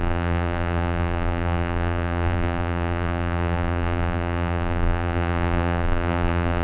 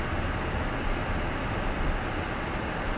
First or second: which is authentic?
second